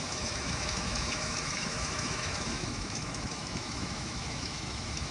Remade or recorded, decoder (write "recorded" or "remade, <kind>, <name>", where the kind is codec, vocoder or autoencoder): remade, autoencoder, DAC-VAE